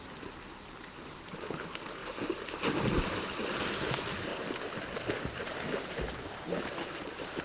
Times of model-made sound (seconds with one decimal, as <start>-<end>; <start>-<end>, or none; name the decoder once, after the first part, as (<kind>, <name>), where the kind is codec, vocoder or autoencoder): none